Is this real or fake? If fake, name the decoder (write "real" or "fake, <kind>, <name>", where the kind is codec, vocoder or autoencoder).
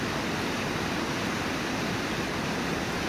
real